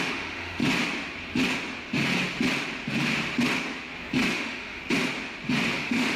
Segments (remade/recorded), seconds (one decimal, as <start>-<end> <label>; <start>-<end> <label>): 0.0-0.6 remade; 0.6-4.3 recorded; 4.3-4.8 remade; 4.8-5.8 recorded; 5.8-6.2 remade